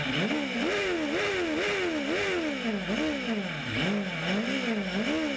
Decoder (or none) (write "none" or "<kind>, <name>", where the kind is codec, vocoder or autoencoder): none